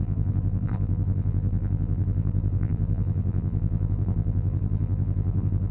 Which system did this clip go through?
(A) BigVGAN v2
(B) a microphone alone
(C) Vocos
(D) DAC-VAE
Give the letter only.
A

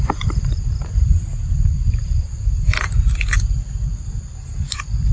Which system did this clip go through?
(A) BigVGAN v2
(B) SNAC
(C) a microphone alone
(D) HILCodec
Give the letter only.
A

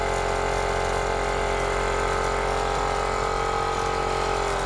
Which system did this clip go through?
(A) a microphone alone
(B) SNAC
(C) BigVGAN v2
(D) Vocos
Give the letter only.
A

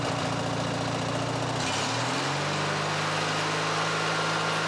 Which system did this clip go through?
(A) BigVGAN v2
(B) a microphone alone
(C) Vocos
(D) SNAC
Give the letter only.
B